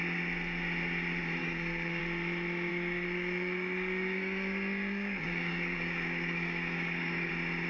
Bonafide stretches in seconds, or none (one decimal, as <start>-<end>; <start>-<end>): 0.0-1.4; 2.0-2.7; 7.3-7.7